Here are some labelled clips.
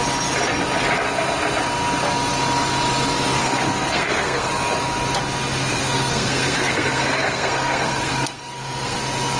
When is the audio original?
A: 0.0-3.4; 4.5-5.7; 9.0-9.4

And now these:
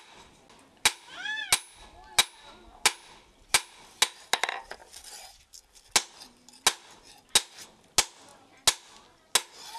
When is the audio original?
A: 0.0-9.8